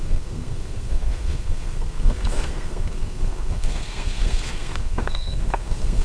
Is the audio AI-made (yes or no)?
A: yes